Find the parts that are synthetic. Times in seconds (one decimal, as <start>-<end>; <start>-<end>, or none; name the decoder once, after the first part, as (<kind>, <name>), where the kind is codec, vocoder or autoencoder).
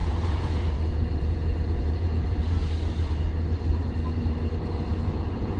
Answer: 0.0-2.4 (vocoder, Vocos); 4.9-5.6